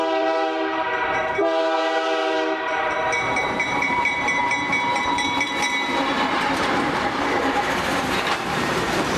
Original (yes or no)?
no